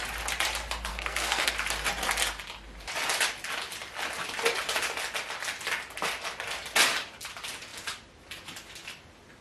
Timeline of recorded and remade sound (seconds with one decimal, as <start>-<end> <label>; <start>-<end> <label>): 0.0-0.9 recorded; 0.9-1.5 remade; 1.5-9.4 recorded